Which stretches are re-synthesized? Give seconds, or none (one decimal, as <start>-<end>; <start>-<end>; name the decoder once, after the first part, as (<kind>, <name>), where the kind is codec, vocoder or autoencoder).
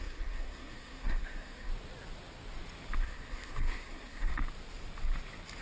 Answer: 0.0-1.7 (codec, SNAC); 3.0-4.3